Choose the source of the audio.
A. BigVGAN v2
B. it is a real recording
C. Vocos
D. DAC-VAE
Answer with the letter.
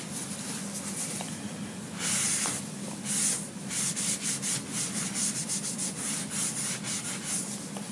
B